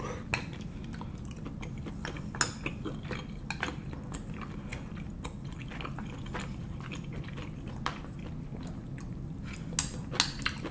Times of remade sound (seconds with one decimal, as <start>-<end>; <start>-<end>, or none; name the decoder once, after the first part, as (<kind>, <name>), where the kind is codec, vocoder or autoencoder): none